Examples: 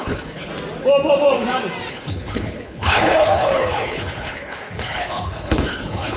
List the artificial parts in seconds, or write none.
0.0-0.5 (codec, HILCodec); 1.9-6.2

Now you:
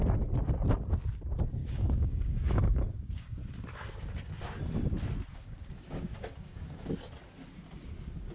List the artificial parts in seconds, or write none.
1.6-3.4 (codec, DAC); 5.3-6.9

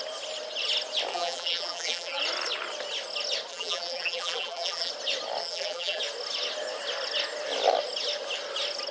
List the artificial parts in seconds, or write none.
1.1-2.2 (vocoder, BigVGAN v2); 3.5-4.9; 5.4-6.0

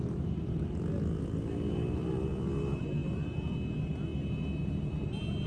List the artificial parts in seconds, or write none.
none

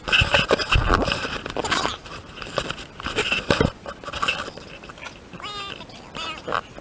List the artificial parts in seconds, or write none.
0.8-4.9 (vocoder, BigVGAN v2)

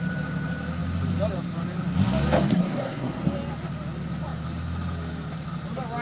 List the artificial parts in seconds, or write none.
2.5-3.2 (codec, SNAC)

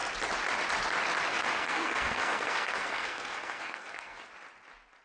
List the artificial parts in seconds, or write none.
1.3-4.3 (codec, SNAC)

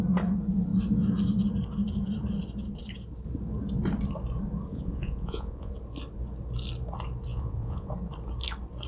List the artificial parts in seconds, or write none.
4.7-5.7 (vocoder, Vocos); 7.3-7.9